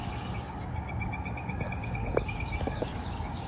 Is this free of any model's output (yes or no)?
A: no